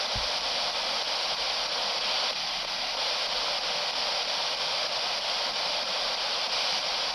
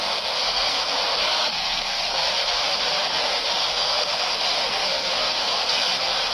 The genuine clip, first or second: first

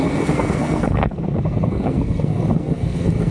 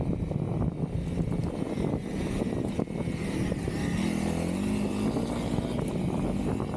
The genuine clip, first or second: second